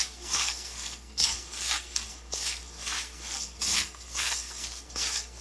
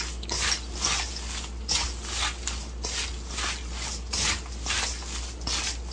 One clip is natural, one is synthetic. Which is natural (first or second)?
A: second